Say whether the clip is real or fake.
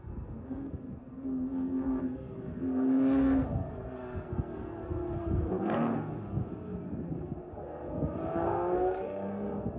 fake